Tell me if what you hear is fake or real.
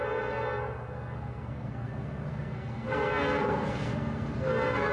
fake